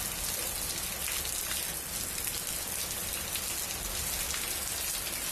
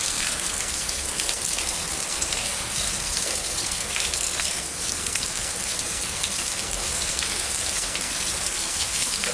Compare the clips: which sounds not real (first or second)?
second